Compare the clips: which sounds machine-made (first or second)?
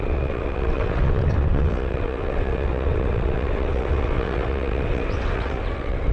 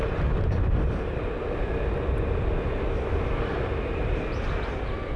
first